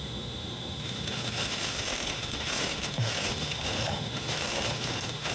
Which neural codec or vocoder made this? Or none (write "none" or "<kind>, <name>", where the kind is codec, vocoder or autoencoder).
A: autoencoder, DAC-VAE